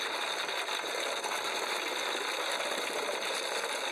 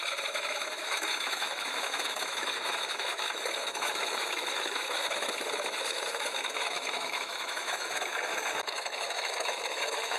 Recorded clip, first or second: first